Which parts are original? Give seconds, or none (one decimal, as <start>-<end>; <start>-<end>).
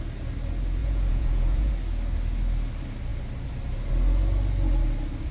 0.0-0.8; 1.7-5.3